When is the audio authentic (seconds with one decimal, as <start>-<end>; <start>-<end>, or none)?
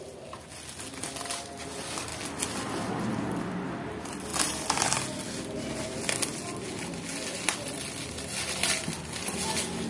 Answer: 0.0-9.9